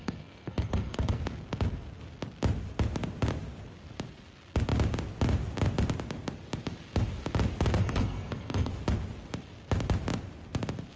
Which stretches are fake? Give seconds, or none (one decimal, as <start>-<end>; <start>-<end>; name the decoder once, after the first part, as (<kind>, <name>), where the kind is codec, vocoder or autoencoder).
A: 0.0-1.2 (codec, SNAC); 7.8-8.7